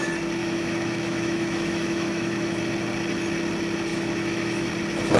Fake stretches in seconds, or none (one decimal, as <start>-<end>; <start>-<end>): 0.4-2.6; 3.9-4.7